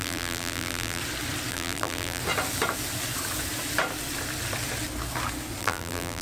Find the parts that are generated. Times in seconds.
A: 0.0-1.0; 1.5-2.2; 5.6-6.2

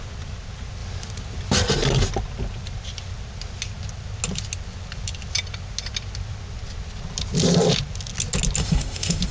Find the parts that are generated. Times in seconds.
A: 8.6-9.3

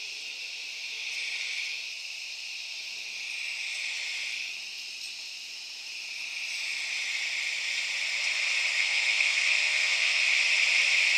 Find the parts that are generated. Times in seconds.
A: 8.8-10.2

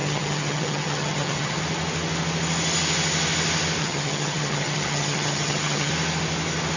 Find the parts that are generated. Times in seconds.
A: 0.0-1.6; 3.8-5.9

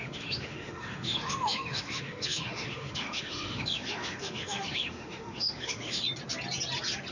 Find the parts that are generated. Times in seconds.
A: 0.0-6.0